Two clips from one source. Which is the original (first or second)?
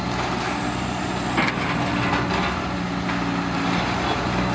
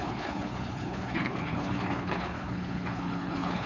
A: first